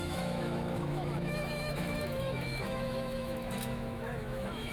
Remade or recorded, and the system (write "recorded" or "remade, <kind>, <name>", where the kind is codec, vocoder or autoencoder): remade, autoencoder, DAC-VAE